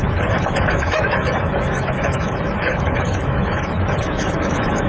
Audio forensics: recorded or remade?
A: remade